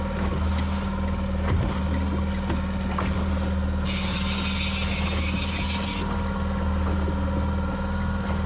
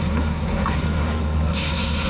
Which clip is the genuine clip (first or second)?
first